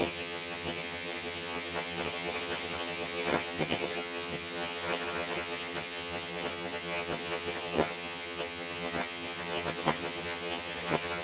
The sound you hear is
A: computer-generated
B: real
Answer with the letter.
A